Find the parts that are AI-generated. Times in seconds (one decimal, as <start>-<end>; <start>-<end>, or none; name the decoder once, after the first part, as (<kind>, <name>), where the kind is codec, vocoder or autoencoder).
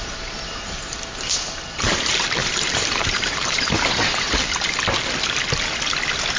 0.0-2.0 (vocoder, BigVGAN v2); 2.4-4.8